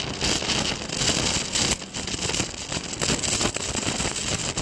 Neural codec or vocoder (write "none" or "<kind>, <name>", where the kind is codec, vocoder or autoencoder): none